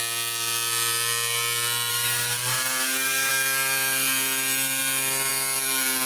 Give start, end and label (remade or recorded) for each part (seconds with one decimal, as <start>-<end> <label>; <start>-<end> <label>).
0.0-1.9 recorded; 1.9-3.3 remade; 3.3-6.1 recorded